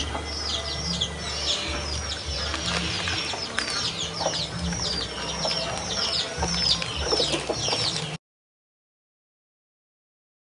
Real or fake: real